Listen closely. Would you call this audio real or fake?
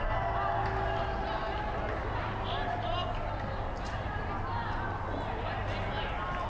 real